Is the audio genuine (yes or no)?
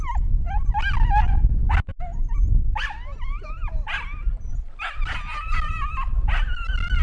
yes